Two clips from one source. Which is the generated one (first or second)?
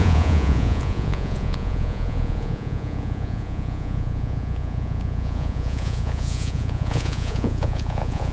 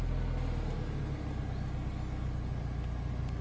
first